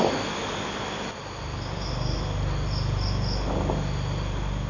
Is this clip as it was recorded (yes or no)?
yes